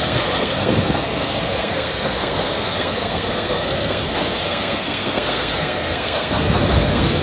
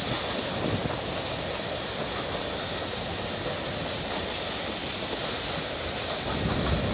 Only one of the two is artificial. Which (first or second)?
first